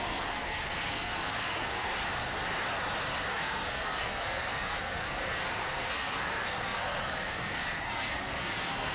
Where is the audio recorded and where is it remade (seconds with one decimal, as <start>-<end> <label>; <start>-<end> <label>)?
0.0-1.9 remade; 1.9-3.3 recorded; 3.3-8.9 remade